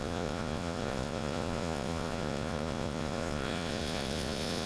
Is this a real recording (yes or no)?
no